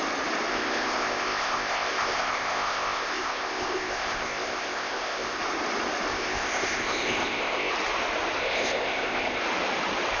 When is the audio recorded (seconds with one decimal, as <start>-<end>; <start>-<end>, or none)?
0.0-0.5; 5.4-6.1; 7.7-8.4; 9.4-10.2